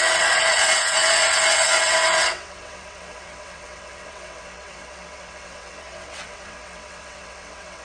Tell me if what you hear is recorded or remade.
remade